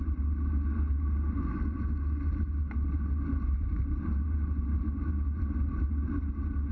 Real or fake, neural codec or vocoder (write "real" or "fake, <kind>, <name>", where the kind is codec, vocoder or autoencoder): real